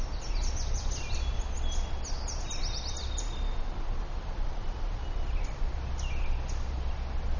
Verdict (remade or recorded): recorded